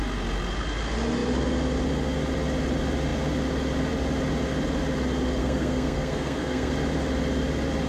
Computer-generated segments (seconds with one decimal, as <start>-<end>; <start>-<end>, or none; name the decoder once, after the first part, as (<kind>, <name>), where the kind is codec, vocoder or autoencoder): 5.4-6.7 (codec, SNAC)